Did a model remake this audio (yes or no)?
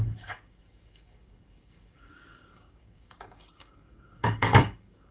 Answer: yes